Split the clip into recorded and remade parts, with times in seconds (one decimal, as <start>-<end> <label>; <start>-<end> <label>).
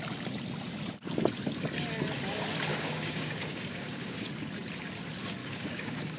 0.0-2.7 recorded; 2.7-4.3 remade; 4.3-5.4 recorded; 5.4-6.2 remade